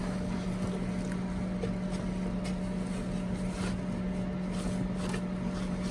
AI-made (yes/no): no